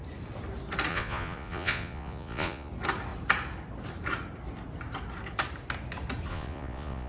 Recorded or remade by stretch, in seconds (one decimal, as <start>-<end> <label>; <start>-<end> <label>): 0.0-0.9 recorded; 0.9-2.7 remade; 2.7-6.3 recorded; 6.3-7.1 remade